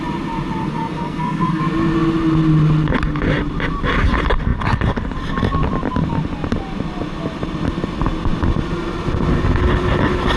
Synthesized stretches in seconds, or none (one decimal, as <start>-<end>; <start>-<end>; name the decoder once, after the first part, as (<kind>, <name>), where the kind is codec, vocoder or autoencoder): 0.6-1.6 (codec, SNAC)